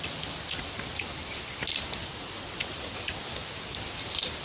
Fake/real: real